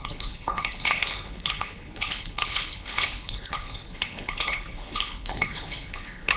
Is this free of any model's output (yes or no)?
no